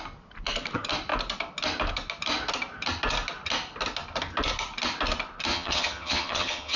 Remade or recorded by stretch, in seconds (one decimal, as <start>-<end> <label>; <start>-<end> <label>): 0.0-5.5 recorded; 5.5-6.8 remade